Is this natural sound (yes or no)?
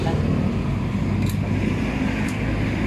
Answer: yes